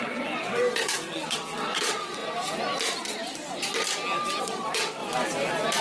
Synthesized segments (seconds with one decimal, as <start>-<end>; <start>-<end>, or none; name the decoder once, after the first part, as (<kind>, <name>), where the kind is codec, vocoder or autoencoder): 0.0-0.6 (vocoder, WaveNeXt); 1.1-2.2; 4.4-5.0